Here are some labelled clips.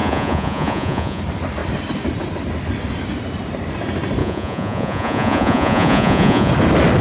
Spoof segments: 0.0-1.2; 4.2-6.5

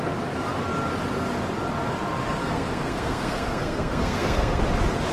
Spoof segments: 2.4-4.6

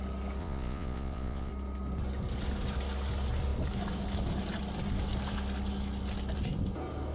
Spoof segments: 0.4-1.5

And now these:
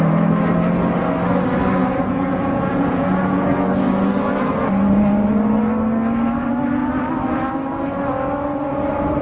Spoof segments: 1.8-3.5

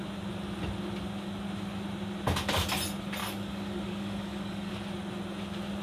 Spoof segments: 3.2-4.7